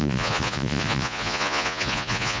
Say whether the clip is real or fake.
fake